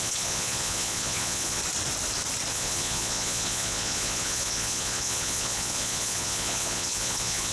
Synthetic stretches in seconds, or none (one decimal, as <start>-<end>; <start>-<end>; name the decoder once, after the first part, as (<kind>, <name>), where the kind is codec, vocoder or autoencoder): 0.0-1.6 (vocoder, Vocos); 2.5-7.5

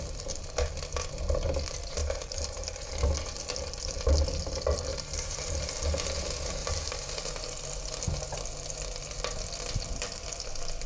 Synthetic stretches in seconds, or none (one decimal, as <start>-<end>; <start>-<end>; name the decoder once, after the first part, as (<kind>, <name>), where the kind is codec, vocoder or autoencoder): 2.0-2.9 (vocoder, BigVGAN v2); 4.9-5.5; 6.6-7.3

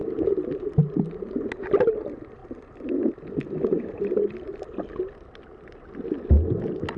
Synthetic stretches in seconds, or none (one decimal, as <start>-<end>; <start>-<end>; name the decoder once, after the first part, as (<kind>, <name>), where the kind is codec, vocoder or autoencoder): none

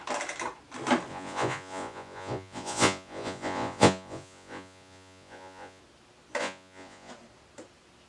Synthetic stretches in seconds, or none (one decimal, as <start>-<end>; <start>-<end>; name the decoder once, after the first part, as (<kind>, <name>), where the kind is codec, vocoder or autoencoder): 1.1-5.8 (vocoder, Vocos); 6.4-7.1

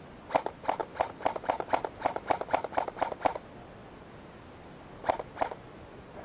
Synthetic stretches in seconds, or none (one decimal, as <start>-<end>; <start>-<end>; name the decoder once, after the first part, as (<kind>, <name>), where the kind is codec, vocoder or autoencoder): 0.8-2.3 (vocoder, BigVGAN v2)

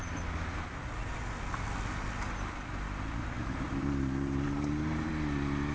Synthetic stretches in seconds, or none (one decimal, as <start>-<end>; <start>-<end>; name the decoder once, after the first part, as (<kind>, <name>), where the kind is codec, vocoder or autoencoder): 3.4-5.1 (vocoder, BigVGAN v2)

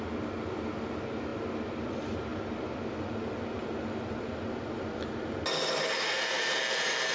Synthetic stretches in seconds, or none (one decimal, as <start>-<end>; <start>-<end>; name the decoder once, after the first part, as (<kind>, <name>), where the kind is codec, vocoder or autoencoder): none